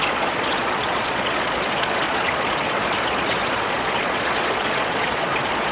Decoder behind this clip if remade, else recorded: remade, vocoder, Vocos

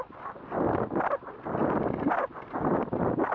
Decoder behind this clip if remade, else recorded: recorded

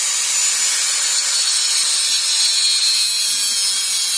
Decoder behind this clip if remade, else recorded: recorded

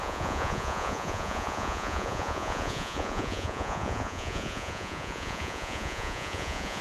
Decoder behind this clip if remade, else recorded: remade, vocoder, Vocos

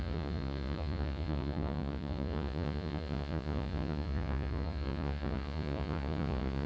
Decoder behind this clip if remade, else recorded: remade, vocoder, Vocos